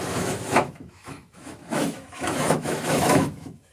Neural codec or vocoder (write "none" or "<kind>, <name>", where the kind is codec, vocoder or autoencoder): autoencoder, DAC-VAE